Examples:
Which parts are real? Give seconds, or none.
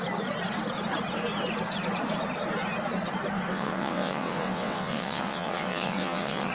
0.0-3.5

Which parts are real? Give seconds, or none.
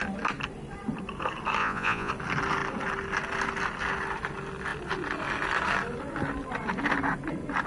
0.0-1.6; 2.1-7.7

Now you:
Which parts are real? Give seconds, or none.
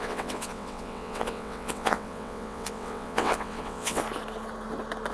4.0-5.1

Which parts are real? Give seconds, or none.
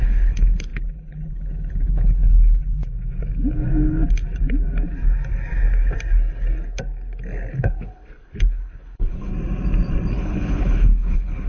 2.8-7.5; 9.3-10.1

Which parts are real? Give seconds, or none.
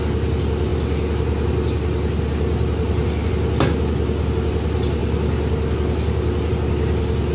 0.0-7.3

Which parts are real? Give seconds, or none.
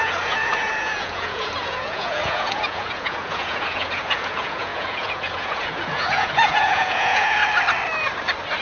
7.4-8.6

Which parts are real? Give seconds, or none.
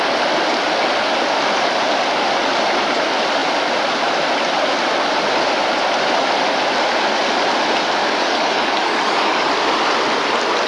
0.0-8.2; 9.5-10.7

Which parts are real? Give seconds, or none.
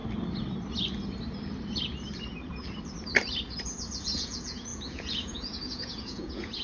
0.0-3.4